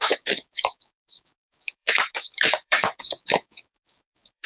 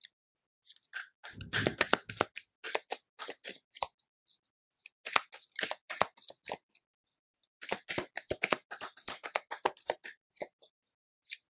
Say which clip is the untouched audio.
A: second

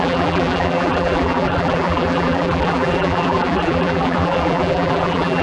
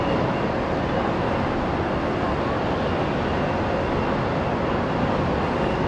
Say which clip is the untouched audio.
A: second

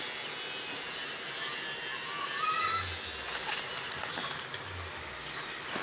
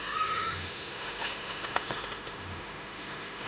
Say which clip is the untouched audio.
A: first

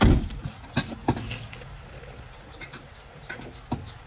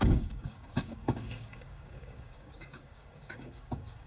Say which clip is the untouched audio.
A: first